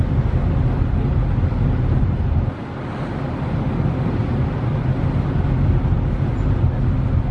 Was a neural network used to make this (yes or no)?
no